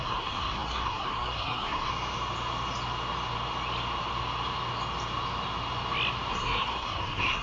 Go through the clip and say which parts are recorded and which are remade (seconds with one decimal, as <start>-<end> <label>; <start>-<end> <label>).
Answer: 0.0-1.9 remade; 1.9-6.3 recorded; 6.3-7.4 remade